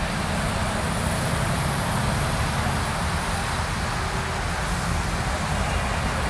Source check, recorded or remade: recorded